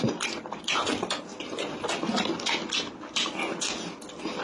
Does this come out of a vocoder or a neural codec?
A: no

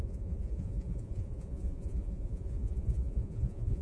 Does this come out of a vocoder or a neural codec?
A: yes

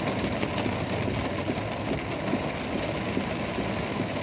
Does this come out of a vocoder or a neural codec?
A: no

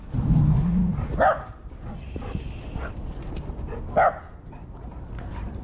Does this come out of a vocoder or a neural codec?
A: no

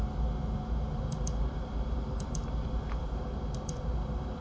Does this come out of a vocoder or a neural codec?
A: yes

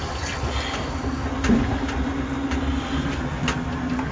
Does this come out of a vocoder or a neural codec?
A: no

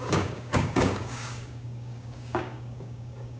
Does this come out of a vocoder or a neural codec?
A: yes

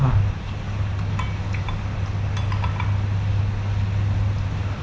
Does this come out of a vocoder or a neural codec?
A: no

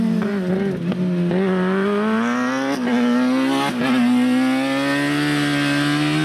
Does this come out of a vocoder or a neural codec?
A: no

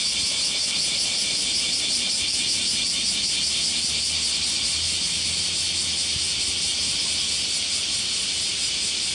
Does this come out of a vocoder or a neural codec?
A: no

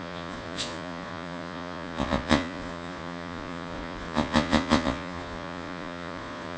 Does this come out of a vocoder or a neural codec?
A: yes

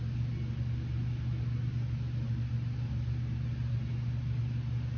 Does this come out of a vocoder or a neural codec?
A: no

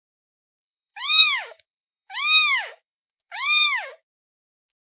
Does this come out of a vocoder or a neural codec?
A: yes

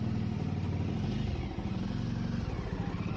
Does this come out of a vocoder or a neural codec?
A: no